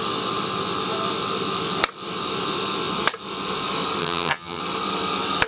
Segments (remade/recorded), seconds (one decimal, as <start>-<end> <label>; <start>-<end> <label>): 0.0-4.0 recorded; 4.0-4.6 remade; 4.6-5.5 recorded